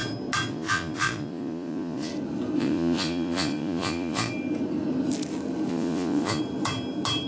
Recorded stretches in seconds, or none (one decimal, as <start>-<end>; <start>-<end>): 0.0-0.5; 2.1-2.6; 4.3-5.7; 6.4-7.3